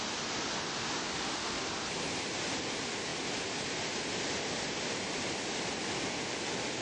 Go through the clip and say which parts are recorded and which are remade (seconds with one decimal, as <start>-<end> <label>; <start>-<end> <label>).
0.0-1.1 recorded; 1.1-1.6 remade; 1.6-6.8 recorded

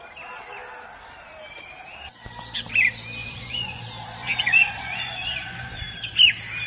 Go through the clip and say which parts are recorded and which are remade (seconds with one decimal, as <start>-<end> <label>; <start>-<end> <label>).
0.0-3.2 recorded; 3.2-3.8 remade; 3.8-4.2 recorded; 4.2-5.8 remade; 5.8-6.7 recorded

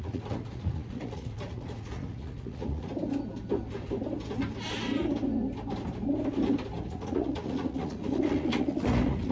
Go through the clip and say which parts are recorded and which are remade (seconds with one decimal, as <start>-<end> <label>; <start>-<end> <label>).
0.0-2.9 remade; 2.9-6.8 recorded; 6.8-9.3 remade

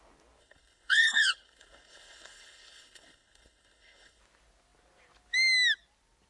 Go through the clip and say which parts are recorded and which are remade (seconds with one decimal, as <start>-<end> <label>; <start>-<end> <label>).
0.0-0.4 recorded; 0.4-4.2 remade; 4.2-6.3 recorded